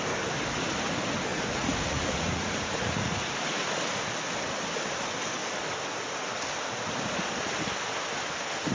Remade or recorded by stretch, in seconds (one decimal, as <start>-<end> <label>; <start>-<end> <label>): 0.0-1.3 recorded; 1.3-3.7 remade; 3.7-8.7 recorded